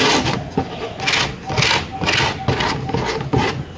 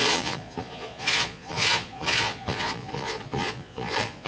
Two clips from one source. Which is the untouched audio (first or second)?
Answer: first